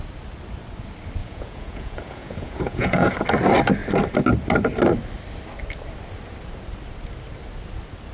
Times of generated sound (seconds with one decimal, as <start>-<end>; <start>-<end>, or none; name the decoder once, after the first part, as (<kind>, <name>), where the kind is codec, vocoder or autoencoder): 1.2-3.1 (vocoder, Vocos)